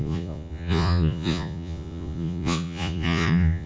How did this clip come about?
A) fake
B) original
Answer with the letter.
A